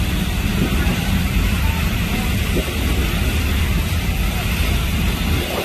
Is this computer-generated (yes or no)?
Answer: no